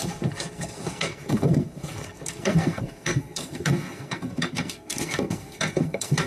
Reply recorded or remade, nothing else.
remade